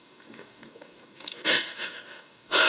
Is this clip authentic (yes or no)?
no